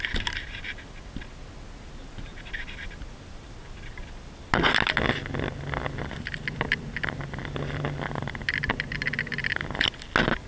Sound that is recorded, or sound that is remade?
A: recorded